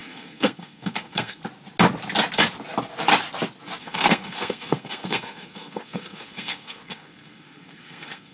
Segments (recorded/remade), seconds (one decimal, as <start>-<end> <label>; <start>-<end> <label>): 0.0-1.4 remade; 1.4-3.8 recorded; 3.8-8.3 remade